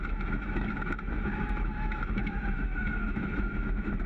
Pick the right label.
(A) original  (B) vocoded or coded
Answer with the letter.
B